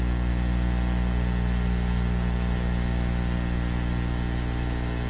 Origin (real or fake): real